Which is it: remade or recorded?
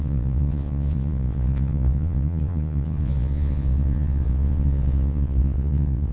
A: remade